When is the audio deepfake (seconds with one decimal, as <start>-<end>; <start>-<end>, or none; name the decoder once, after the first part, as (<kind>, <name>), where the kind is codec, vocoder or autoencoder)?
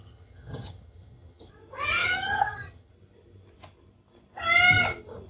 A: 0.0-1.5 (vocoder, HiFi-GAN); 2.0-2.9